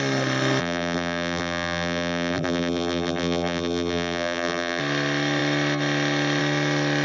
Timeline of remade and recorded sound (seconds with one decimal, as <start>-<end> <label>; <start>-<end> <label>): 0.0-0.6 recorded; 0.6-4.8 remade; 4.8-7.0 recorded